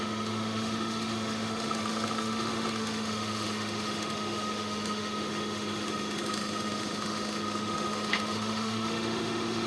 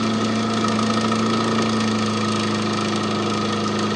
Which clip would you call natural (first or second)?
second